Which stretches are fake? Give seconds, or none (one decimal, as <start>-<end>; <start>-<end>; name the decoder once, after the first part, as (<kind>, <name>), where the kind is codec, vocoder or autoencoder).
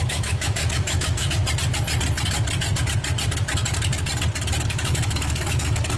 0.0-1.4 (autoencoder, DAC-VAE); 4.7-6.0